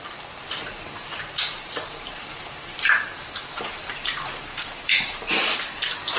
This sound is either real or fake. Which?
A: fake